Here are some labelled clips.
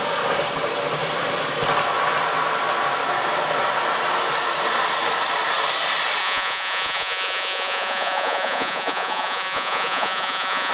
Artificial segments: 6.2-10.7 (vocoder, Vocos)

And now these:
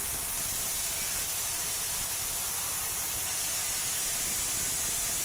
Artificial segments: 0.0-3.1 (vocoder, BigVGAN v2)

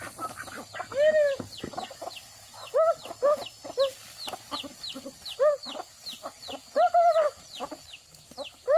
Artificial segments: 0.0-0.9 (vocoder, BigVGAN v2); 6.2-8.8

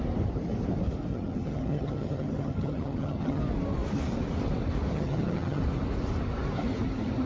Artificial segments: 1.1-3.4 (vocoder, HiFi-GAN); 4.9-5.6

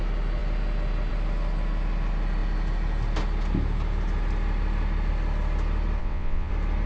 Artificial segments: 6.0-6.5 (vocoder, WaveNeXt)

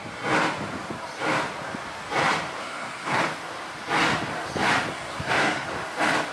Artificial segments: 2.6-3.2 (codec, SNAC); 4.9-5.7

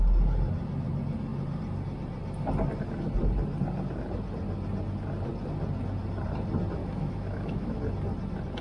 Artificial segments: 6.8-7.8 (autoencoder, DAC-VAE)

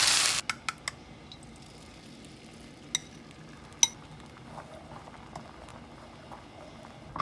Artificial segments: none